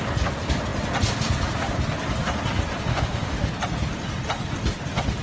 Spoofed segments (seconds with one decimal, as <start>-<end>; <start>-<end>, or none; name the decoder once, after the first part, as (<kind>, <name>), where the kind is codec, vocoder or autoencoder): 2.9-3.5 (autoencoder, DAC-VAE)